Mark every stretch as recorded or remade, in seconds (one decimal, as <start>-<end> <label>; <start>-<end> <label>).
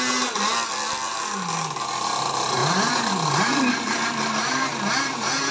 0.0-2.6 recorded; 2.6-5.5 remade